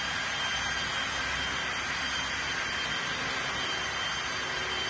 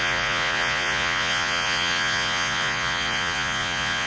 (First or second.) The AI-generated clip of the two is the second